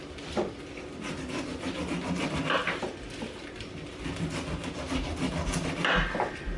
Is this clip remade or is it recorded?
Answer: recorded